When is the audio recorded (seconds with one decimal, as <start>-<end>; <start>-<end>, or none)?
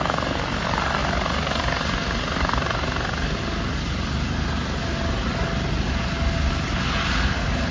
0.0-7.7